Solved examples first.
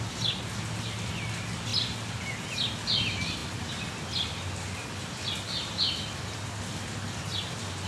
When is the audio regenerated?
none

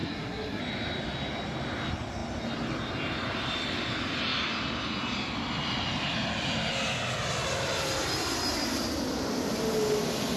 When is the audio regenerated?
0.0-0.6 (codec, SNAC)